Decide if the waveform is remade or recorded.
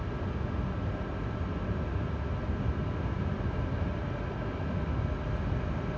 recorded